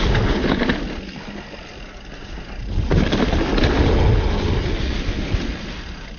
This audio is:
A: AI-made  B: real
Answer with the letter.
B